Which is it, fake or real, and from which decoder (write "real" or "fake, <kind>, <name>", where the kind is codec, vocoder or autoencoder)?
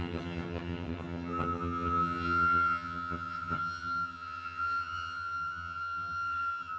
fake, vocoder, HiFi-GAN